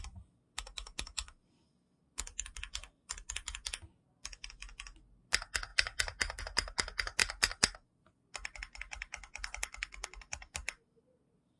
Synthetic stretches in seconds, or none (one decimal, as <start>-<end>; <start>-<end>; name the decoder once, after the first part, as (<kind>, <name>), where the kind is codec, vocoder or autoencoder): 5.7-6.4 (vocoder, BigVGAN v2)